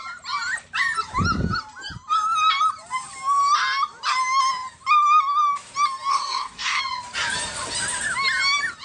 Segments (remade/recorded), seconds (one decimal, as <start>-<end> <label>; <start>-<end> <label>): 0.0-6.1 recorded; 6.1-6.8 remade; 6.8-8.8 recorded

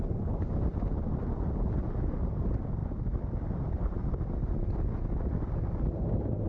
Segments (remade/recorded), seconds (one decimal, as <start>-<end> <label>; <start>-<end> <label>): 0.0-0.7 recorded; 0.7-1.8 remade; 1.8-6.5 recorded

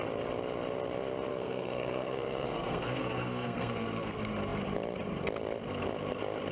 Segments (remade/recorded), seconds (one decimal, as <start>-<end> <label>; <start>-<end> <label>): 0.0-1.3 recorded; 1.3-4.1 remade; 4.1-6.5 recorded